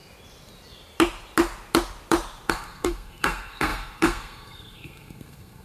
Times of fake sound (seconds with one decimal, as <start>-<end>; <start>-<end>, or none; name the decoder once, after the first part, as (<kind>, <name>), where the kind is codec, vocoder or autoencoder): 2.5-5.6 (codec, SNAC)